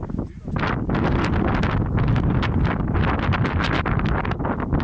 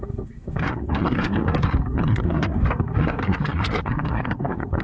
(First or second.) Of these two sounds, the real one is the first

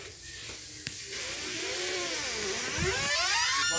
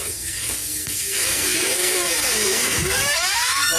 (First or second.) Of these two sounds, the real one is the first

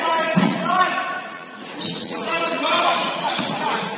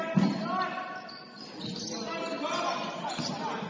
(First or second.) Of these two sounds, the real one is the second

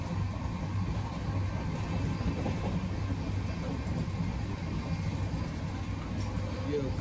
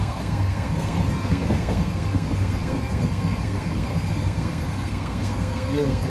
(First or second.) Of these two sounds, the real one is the first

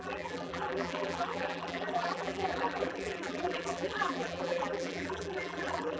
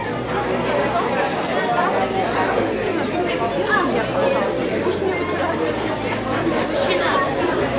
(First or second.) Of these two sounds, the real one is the second